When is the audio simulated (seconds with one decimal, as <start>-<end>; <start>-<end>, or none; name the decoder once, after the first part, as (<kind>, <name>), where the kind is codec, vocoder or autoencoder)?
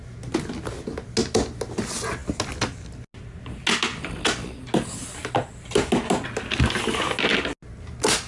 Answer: none